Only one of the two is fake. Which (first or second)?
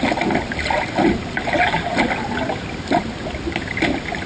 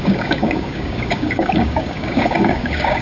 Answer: second